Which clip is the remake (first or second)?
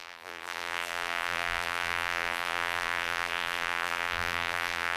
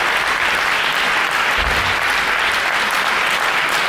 first